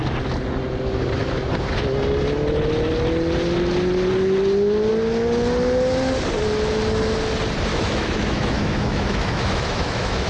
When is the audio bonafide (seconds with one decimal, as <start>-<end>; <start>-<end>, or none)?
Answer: 0.0-7.7